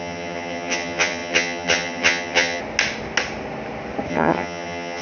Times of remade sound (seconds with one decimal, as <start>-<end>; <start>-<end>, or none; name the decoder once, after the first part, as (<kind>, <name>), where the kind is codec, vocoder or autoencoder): 0.0-2.6 (vocoder, HiFi-GAN); 4.1-5.0